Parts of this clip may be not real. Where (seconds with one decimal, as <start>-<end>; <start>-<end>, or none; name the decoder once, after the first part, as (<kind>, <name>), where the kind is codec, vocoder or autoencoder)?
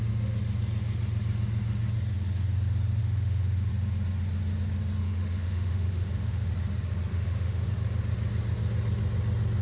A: 3.0-3.7 (autoencoder, DAC-VAE); 5.0-6.5; 7.1-7.7